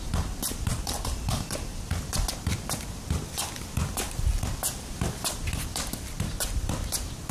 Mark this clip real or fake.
fake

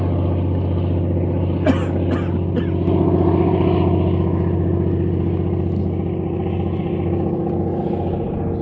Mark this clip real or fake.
real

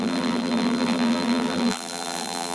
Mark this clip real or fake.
fake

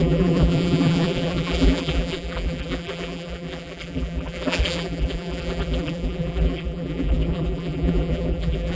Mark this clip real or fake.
fake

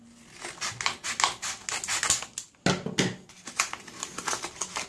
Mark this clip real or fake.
real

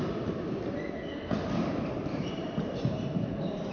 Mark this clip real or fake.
fake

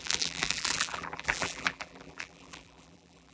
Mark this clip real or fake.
fake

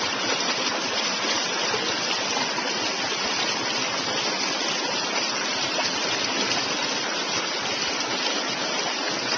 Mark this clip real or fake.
real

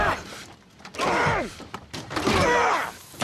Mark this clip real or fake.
fake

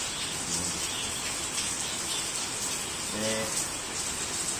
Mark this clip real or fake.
real